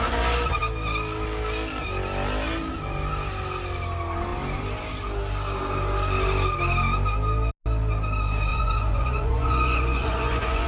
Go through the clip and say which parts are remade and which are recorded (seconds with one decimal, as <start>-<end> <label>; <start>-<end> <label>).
0.0-8.5 recorded; 8.5-10.7 remade